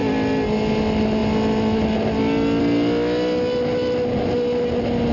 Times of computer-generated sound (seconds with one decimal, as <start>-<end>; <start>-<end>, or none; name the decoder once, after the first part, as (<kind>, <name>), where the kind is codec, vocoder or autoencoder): none

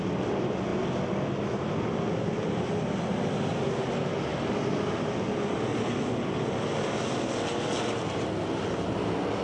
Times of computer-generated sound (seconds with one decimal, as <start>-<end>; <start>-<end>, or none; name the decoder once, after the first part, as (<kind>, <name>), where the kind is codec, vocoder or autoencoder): 4.3-4.8 (vocoder, BigVGAN v2); 5.7-6.9

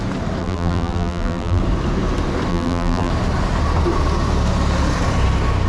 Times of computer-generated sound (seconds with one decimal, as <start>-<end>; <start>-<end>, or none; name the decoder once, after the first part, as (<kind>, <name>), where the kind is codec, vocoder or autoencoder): 0.4-1.6 (vocoder, BigVGAN v2); 2.5-3.1

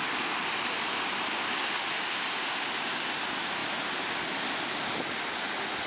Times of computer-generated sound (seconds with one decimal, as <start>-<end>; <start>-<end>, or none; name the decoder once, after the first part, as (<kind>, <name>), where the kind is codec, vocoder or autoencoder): 3.6-4.2 (vocoder, BigVGAN v2)

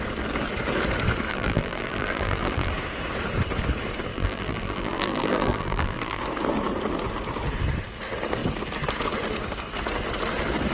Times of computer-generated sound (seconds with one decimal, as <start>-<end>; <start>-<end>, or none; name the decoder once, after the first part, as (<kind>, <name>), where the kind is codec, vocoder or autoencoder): 1.3-2.7 (vocoder, BigVGAN v2); 4.1-6.2